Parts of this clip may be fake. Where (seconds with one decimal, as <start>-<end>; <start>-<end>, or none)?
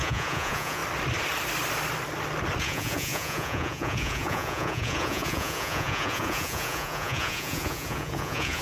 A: 0.0-0.8; 2.6-8.6